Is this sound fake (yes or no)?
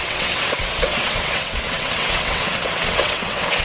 yes